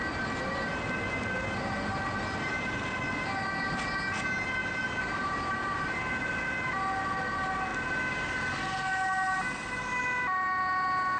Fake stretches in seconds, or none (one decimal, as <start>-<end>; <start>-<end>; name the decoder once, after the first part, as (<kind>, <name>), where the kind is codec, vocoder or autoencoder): 4.6-6.0 (vocoder, BigVGAN v2)

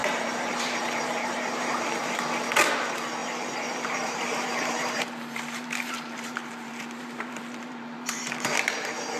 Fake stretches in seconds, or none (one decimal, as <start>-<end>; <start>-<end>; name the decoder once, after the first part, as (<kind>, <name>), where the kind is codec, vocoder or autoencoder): 0.0-2.2 (vocoder, BigVGAN v2); 3.2-8.2

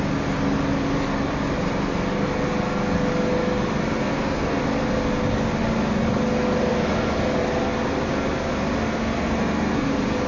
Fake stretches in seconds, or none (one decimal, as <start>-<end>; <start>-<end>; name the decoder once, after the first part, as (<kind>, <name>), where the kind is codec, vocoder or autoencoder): 4.0-4.6 (codec, SNAC); 8.8-9.9

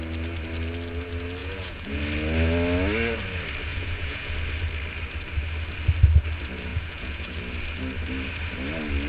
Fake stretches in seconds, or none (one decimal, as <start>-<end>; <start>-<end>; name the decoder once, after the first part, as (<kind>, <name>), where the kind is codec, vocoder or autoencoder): 1.4-2.0 (vocoder, Vocos); 3.7-4.3; 6.7-7.4